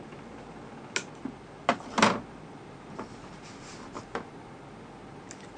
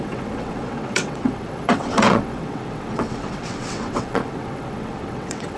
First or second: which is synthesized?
second